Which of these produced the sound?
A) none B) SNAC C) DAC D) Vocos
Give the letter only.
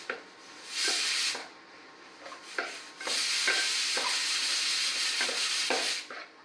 A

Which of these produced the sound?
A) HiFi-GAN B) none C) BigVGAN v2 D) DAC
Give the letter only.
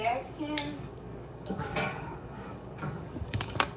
D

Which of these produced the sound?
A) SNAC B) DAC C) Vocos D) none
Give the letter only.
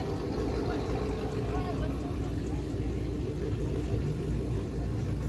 D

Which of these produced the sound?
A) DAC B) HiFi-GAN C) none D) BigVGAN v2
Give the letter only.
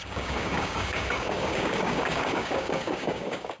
A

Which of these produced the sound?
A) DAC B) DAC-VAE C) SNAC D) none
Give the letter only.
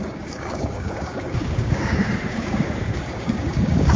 A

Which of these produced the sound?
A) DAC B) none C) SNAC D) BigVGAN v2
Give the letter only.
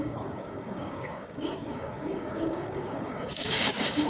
A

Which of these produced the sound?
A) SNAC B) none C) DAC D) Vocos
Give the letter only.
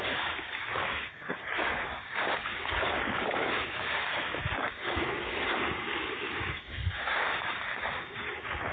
C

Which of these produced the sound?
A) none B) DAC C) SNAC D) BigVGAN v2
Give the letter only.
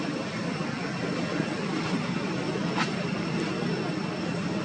A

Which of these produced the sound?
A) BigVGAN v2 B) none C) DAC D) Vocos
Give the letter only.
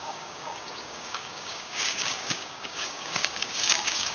C